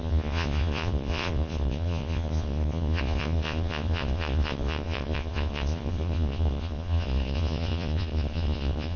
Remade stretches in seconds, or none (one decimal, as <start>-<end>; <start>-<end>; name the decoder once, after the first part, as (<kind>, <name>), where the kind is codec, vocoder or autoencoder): 0.0-9.0 (vocoder, Vocos)